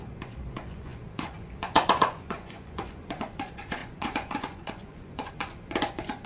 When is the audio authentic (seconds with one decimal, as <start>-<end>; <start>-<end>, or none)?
none

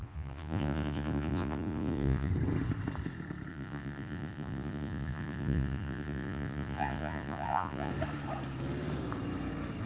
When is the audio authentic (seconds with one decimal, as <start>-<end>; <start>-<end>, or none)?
2.3-3.5; 7.9-9.9

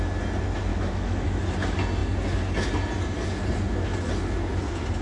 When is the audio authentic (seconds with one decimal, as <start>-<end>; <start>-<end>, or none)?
0.0-0.7; 1.4-5.0